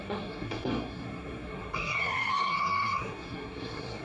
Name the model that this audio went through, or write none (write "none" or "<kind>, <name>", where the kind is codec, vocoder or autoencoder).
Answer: codec, SNAC